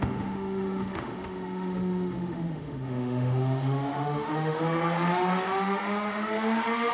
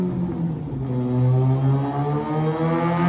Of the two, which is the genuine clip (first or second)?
second